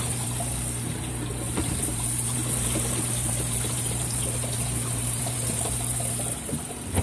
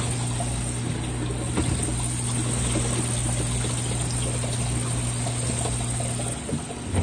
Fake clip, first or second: first